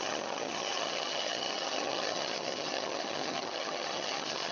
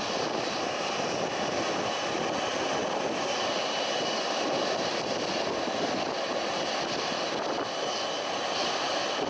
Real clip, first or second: second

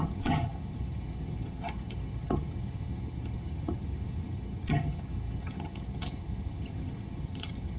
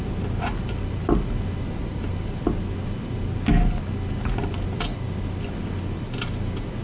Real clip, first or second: second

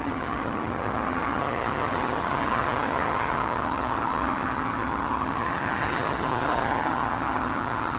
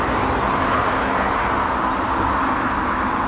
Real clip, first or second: second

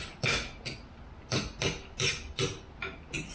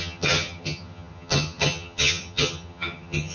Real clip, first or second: first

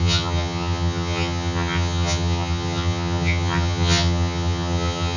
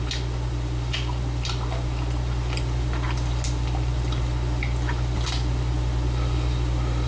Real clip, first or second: second